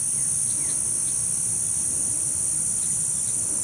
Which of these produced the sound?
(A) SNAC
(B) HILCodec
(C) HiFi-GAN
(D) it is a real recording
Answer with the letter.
D